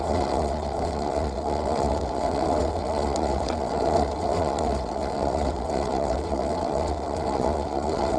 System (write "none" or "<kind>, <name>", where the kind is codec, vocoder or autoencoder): vocoder, WaveNeXt